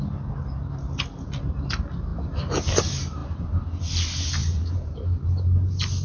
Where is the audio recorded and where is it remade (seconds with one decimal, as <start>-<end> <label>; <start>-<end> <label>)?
0.0-3.2 recorded; 3.2-3.8 remade; 3.8-4.4 recorded; 4.4-5.0 remade; 5.0-6.0 recorded